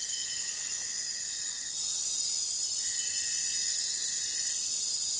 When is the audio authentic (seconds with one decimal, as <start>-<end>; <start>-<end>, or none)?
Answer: 0.0-5.2